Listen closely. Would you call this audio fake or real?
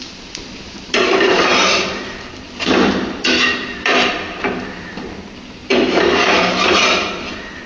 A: fake